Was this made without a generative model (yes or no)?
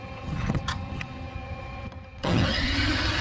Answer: no